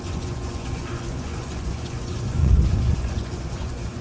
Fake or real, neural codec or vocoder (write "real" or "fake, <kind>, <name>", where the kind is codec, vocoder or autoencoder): fake, vocoder, Vocos